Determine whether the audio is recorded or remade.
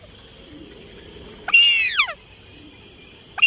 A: recorded